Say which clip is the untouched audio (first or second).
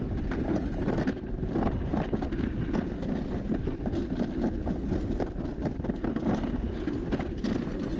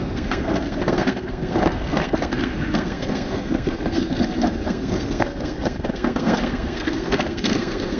first